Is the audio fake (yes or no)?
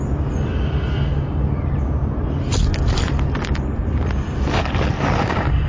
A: no